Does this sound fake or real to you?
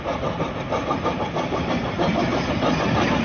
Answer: real